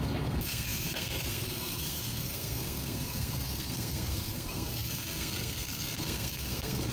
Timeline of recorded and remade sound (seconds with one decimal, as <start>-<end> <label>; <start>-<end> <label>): 0.0-6.9 remade